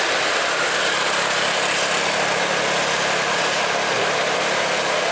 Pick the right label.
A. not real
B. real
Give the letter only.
B